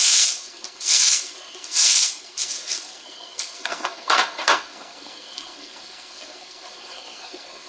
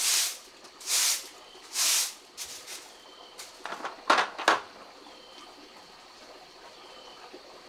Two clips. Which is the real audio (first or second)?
second